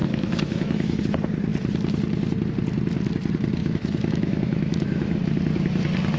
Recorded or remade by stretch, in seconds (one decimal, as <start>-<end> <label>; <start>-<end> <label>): 0.0-1.0 remade; 1.0-3.6 recorded; 3.6-5.2 remade; 5.2-6.2 recorded